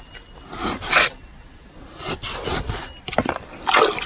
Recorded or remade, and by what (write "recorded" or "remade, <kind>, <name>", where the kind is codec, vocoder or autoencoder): recorded